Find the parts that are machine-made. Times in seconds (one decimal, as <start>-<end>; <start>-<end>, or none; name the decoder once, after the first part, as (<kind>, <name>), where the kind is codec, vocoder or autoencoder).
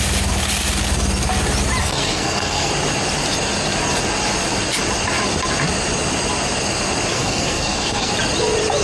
1.8-2.7 (codec, SNAC); 7.1-8.1